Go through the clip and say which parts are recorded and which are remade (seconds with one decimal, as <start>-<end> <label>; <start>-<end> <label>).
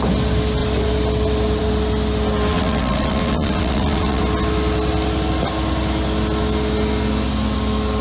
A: 0.0-2.5 recorded; 2.5-4.2 remade; 4.2-8.0 recorded